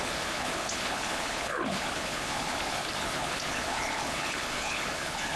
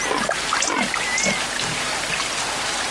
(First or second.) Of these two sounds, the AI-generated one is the first